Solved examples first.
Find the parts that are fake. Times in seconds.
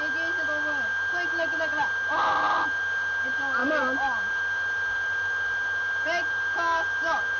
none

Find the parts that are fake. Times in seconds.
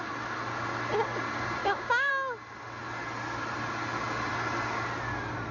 1.6-2.1 (codec, DAC)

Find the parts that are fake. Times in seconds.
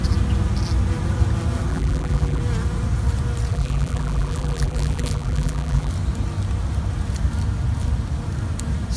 1.7-2.4 (vocoder, BigVGAN v2); 3.5-5.9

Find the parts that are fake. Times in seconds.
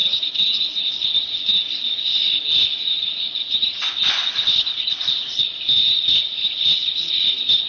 none